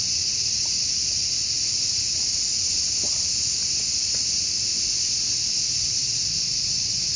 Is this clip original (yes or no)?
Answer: yes